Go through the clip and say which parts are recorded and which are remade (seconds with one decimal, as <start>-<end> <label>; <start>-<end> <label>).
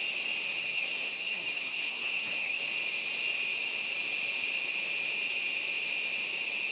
0.0-0.6 recorded; 0.6-2.6 remade; 2.6-6.7 recorded